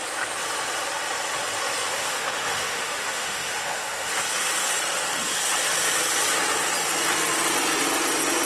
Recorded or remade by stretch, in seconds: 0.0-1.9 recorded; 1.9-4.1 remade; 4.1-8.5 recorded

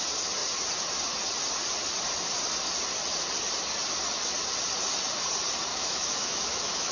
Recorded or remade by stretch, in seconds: 0.0-5.7 recorded; 5.7-6.9 remade

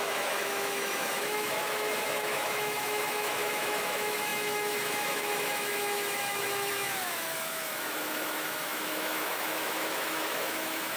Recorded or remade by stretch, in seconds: 0.0-11.0 remade

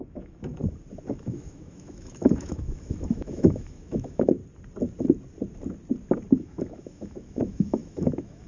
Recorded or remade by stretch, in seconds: 0.0-0.6 remade; 0.6-1.1 recorded; 1.1-4.4 remade; 4.4-6.3 recorded; 6.3-8.5 remade

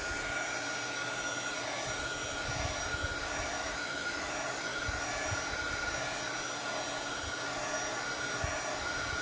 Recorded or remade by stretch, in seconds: 0.0-3.6 recorded; 3.6-4.3 remade; 4.3-9.2 recorded

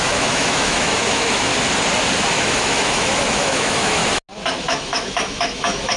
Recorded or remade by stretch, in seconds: 0.0-1.5 remade; 1.5-2.3 recorded; 2.3-4.0 remade; 4.0-4.6 recorded; 4.6-6.0 remade

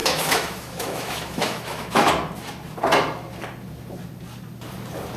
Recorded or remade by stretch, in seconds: 0.0-2.1 remade; 2.1-5.2 recorded